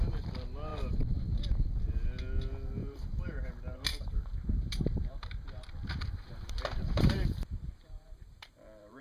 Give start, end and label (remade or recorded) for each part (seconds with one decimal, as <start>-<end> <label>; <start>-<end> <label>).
0.0-2.8 recorded; 2.8-3.5 remade; 3.5-3.9 recorded; 3.9-9.0 remade